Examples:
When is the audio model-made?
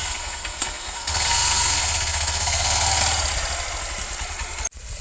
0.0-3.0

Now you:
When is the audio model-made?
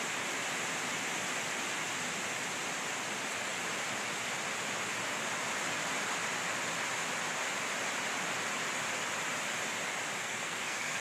10.2-11.0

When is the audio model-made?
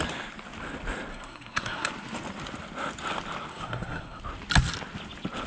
1.1-1.9; 3.5-4.2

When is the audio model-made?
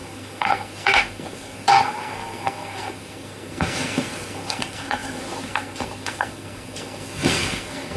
0.0-8.0